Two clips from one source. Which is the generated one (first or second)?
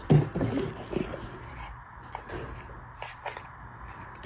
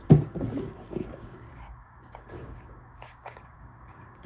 second